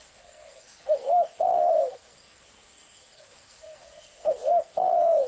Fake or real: fake